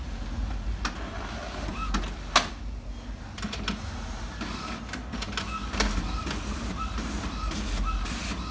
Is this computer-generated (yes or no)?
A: no